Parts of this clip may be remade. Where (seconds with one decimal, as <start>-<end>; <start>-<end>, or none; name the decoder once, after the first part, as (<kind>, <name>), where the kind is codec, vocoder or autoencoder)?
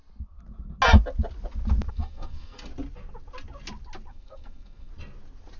1.9-2.7 (codec, SNAC); 4.1-4.9